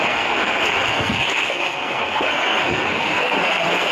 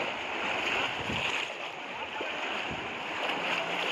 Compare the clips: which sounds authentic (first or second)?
second